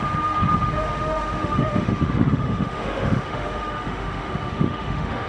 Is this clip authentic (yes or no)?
no